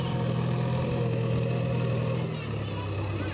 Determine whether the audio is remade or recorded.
recorded